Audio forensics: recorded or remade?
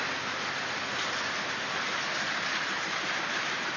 recorded